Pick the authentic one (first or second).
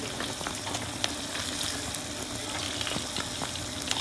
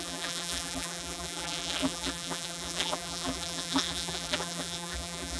first